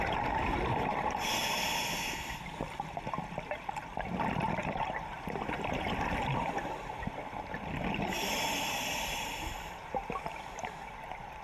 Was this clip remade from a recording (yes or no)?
no